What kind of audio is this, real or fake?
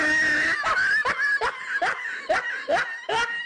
real